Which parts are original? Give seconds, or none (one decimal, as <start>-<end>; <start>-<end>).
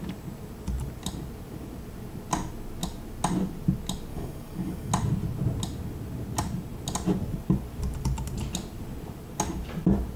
0.0-4.1; 4.9-10.2